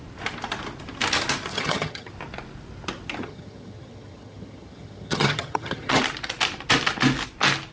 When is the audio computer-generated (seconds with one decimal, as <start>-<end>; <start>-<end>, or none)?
1.5-2.1; 3.2-6.0